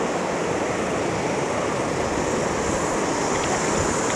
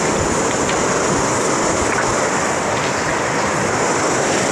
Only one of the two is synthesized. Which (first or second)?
second